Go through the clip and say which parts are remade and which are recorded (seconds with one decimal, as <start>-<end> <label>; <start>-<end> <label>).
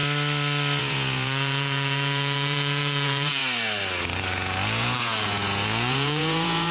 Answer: 0.0-0.8 recorded; 0.8-3.4 remade; 3.4-4.3 recorded; 4.3-6.7 remade